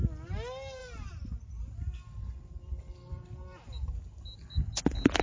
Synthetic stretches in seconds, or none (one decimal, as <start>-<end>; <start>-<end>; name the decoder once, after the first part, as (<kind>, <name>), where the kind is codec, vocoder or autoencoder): 0.8-3.9 (vocoder, BigVGAN v2)